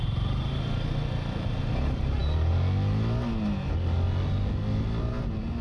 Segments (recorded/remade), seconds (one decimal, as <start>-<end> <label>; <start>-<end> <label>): 0.0-5.6 recorded